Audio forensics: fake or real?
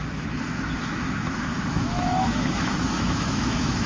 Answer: fake